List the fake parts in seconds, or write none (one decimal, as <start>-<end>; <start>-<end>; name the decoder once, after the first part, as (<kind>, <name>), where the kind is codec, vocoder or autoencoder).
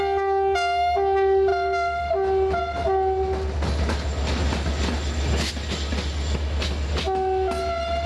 none